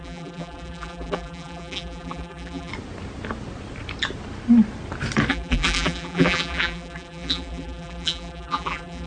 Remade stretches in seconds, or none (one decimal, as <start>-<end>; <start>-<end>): 0.0-2.7; 5.3-9.1